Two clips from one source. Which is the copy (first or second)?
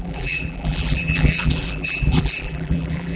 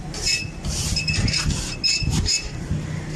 first